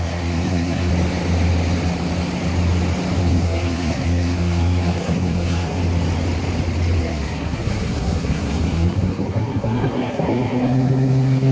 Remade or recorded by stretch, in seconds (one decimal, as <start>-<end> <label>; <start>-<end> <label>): 0.0-0.9 remade; 0.9-3.2 recorded; 3.2-5.8 remade; 5.8-7.0 recorded; 7.0-11.5 remade